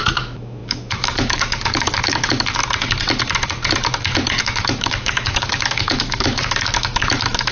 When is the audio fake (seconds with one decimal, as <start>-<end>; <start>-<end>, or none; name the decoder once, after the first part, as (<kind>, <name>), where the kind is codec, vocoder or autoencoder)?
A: 0.0-2.6 (autoencoder, DAC-VAE); 4.4-7.5